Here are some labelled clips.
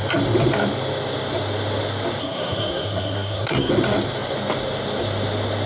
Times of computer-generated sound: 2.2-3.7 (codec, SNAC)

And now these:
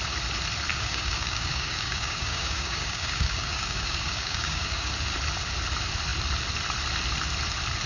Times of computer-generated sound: 0.7-4.9 (codec, DAC)

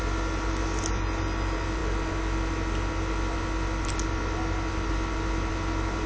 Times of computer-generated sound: none

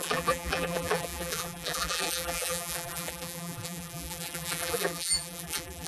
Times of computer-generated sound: 0.0-5.9 (vocoder, BigVGAN v2)

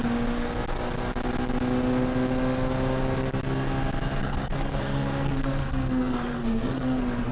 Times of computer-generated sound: 4.2-7.3 (codec, SNAC)